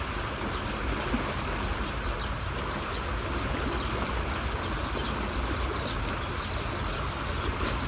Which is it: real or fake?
real